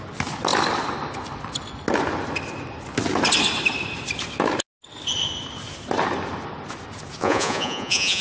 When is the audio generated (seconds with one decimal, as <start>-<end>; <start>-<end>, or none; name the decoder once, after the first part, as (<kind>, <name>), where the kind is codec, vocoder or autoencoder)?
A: 7.2-8.2 (vocoder, Vocos)